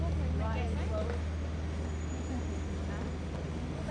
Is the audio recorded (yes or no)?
yes